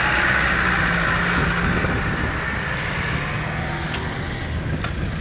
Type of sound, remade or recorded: recorded